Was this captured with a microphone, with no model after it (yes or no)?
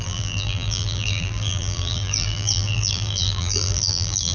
no